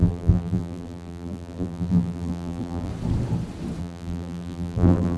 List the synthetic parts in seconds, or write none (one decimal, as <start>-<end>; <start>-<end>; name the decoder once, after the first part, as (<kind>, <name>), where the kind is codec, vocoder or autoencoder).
0.0-2.9 (vocoder, BigVGAN v2); 3.8-5.2